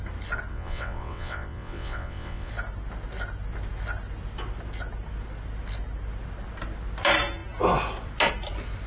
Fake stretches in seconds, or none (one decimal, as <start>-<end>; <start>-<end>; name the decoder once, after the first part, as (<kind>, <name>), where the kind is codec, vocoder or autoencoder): 0.5-2.5 (vocoder, WaveNeXt)